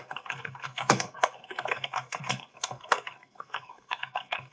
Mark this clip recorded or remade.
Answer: remade